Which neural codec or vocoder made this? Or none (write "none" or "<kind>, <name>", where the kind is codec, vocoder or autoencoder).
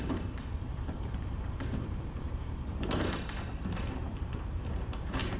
vocoder, BigVGAN v2